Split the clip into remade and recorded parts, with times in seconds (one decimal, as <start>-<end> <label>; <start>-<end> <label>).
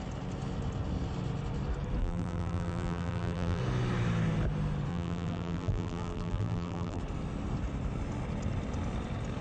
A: 0.0-2.0 recorded; 2.0-3.6 remade; 3.6-4.9 recorded; 4.9-7.0 remade; 7.0-9.4 recorded